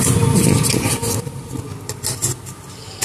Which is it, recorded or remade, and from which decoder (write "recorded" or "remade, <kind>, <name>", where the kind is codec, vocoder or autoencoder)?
recorded